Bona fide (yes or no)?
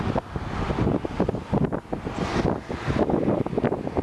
yes